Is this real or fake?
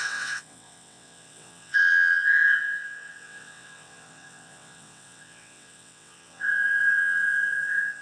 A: fake